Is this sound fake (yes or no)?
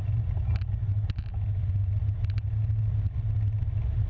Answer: no